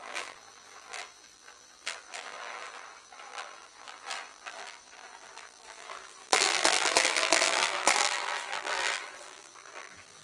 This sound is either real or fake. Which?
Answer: fake